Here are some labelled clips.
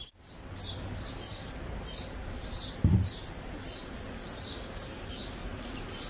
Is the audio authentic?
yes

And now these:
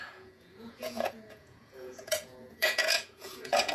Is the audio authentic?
no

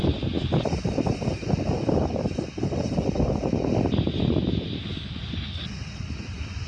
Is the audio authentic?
yes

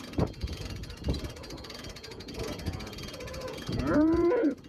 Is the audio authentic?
no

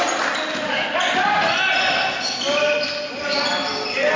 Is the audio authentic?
yes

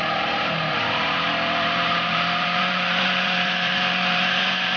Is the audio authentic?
no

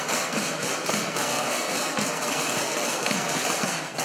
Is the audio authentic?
no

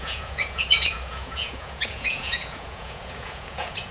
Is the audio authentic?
no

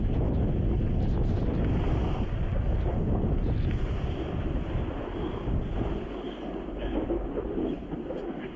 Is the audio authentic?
yes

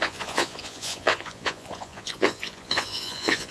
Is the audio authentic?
no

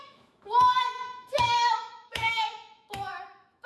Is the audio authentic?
no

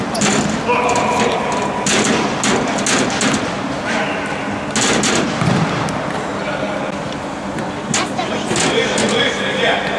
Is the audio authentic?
yes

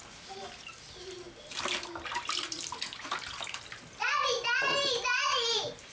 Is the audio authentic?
yes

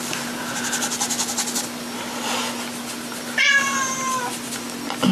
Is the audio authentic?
yes